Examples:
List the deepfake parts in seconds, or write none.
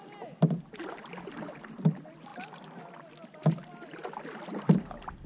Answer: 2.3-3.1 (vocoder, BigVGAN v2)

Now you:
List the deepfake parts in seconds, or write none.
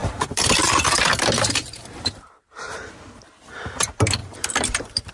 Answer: 0.0-2.4 (vocoder, BigVGAN v2); 4.2-5.1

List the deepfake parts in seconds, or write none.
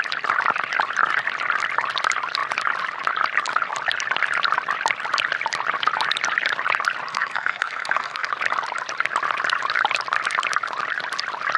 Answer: 7.1-8.3 (codec, SNAC)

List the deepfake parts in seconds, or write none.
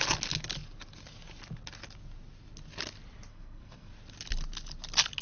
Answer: 3.3-3.9 (codec, SNAC)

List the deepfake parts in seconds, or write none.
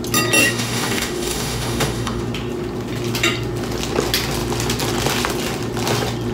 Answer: 0.4-2.2 (autoencoder, DAC-VAE)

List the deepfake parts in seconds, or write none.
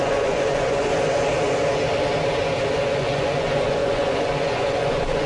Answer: 0.0-0.9 (vocoder, Vocos); 2.7-5.3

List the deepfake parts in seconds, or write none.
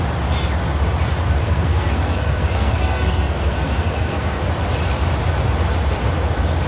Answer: 1.4-4.4 (codec, SNAC)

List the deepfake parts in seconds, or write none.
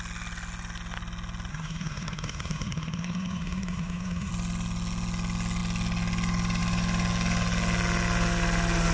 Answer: 1.5-4.3 (codec, SNAC)